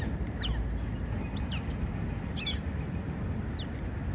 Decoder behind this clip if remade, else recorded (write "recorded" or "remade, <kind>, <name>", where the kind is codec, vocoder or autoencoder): recorded